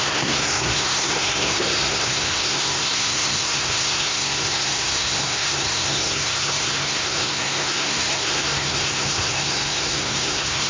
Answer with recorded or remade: remade